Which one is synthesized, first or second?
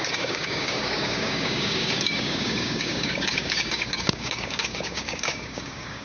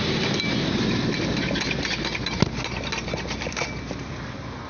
first